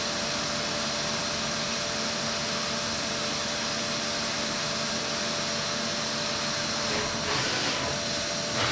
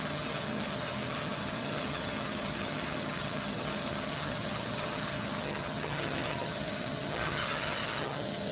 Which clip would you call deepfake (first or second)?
second